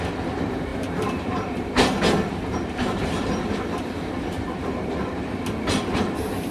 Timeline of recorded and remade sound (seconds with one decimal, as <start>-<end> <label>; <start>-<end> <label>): 0.0-5.3 remade; 5.3-6.0 recorded; 6.0-6.5 remade